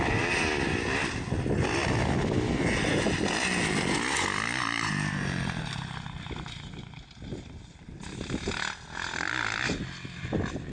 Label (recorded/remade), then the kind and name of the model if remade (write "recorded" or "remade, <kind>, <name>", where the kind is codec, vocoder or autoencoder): recorded